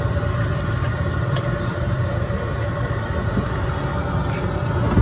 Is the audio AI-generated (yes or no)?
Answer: no